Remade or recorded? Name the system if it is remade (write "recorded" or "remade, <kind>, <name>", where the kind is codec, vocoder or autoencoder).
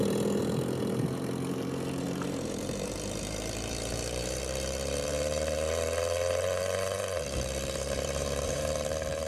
remade, vocoder, BigVGAN v2